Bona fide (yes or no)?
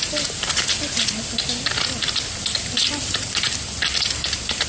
yes